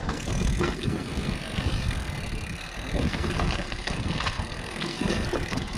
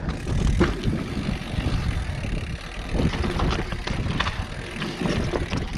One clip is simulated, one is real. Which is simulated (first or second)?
first